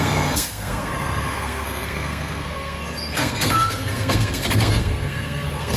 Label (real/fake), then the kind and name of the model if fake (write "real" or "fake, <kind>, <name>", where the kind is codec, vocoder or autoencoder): fake, codec, SNAC